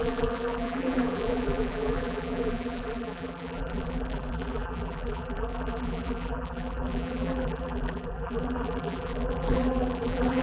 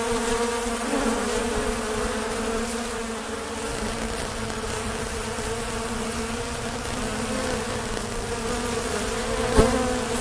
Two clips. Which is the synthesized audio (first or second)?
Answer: first